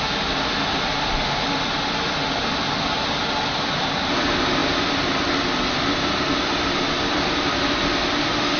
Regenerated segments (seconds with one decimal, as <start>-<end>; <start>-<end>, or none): none